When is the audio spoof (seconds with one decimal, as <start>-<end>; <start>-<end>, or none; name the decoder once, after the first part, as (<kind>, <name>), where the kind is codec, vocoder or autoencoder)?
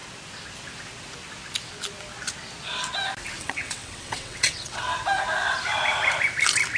3.4-4.9 (vocoder, WaveNeXt)